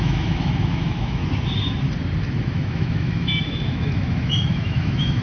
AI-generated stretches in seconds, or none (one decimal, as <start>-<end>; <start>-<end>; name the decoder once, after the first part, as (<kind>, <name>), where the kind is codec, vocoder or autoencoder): 0.0-1.2 (autoencoder, DAC-VAE); 2.4-5.2